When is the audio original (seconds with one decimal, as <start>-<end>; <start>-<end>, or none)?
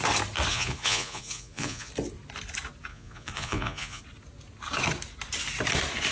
0.0-0.5; 1.9-2.9; 4.0-6.1